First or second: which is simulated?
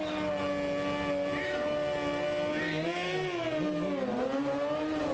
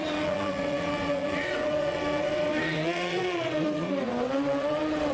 second